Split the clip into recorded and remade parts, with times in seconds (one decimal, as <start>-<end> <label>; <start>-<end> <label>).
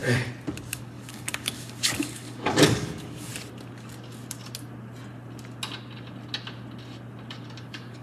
0.0-0.7 recorded; 0.7-3.3 remade; 3.3-7.6 recorded; 7.6-8.0 remade